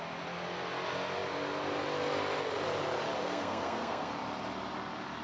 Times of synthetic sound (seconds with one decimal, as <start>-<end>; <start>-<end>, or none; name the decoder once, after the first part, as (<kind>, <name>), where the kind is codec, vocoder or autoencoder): 3.2-4.1 (codec, SNAC)